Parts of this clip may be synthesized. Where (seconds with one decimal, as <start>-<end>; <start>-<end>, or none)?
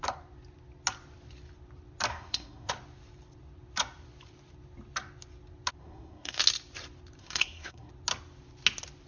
2.1-2.7; 5.8-6.4; 7.2-7.9